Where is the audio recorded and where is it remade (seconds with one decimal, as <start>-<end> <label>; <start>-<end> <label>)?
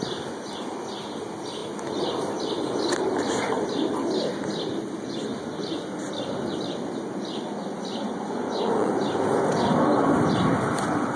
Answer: 0.0-8.0 recorded; 8.0-8.9 remade; 8.9-11.2 recorded